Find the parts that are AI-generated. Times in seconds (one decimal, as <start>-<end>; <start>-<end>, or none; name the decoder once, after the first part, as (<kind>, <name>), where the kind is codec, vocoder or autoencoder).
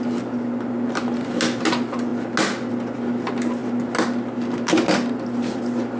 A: none